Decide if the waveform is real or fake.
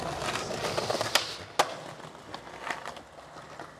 real